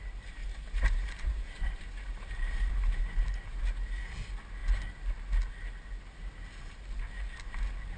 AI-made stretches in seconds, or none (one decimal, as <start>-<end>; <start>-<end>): 0.4-3.0